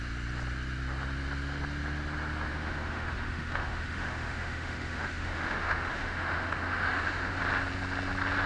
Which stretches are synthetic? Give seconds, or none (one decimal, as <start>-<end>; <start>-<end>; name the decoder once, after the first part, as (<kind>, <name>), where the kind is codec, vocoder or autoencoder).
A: 2.5-7.4 (autoencoder, DAC-VAE)